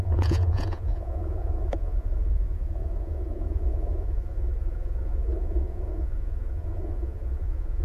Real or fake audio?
fake